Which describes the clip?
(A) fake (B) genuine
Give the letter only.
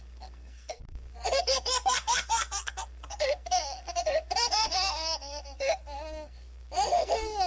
A